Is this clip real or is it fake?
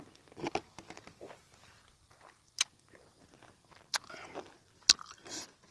real